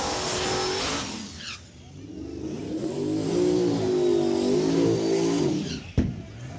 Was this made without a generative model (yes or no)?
yes